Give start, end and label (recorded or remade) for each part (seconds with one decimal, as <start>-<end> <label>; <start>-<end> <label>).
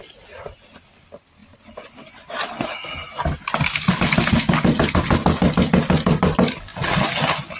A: 0.0-7.6 recorded